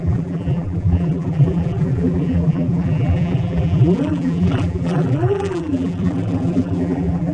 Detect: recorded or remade remade